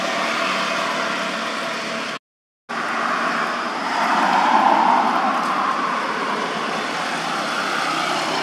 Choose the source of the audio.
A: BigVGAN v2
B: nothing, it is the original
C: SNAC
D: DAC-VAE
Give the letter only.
B